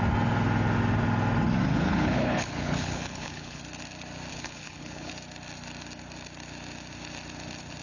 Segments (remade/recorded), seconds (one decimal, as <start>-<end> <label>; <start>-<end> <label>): 0.0-1.7 recorded; 1.7-3.6 remade; 3.6-4.3 recorded; 4.3-5.1 remade; 5.1-7.8 recorded